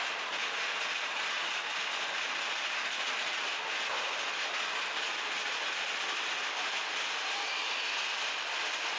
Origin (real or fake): real